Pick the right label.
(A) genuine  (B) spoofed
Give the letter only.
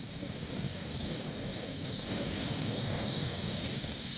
B